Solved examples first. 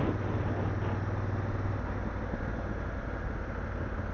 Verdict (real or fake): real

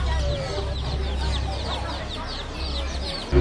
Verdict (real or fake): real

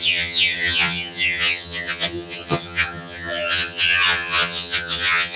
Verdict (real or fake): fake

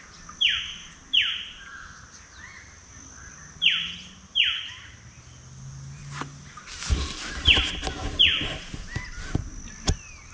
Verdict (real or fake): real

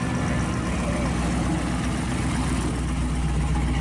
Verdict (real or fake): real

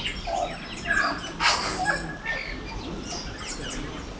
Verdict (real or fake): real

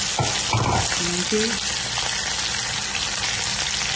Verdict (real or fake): real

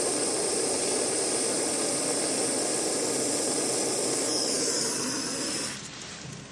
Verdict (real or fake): real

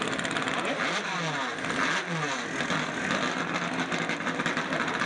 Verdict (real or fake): real